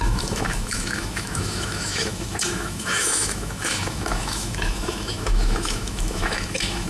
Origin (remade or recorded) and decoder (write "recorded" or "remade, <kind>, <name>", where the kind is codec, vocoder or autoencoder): remade, autoencoder, DAC-VAE